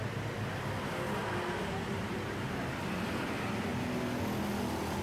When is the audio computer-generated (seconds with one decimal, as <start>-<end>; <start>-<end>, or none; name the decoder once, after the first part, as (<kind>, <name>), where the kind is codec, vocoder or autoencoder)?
none